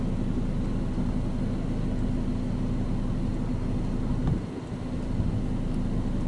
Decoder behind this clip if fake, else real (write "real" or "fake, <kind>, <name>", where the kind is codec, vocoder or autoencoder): real